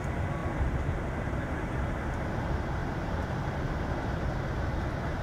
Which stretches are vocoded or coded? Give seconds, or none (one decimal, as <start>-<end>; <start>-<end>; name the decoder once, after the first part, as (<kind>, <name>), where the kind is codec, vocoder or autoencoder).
none